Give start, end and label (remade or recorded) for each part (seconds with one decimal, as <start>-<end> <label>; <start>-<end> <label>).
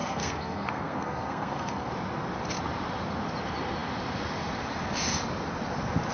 0.0-1.9 remade; 1.9-6.1 recorded